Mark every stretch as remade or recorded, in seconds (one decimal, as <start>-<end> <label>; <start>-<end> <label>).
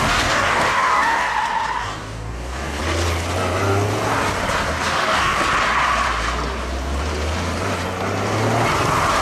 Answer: 0.0-1.3 remade; 1.3-1.8 recorded; 1.8-2.8 remade; 2.8-5.0 recorded; 5.0-5.4 remade; 5.4-9.2 recorded